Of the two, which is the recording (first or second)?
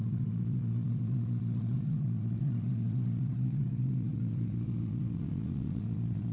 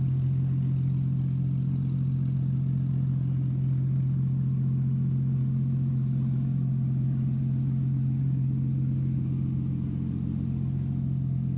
second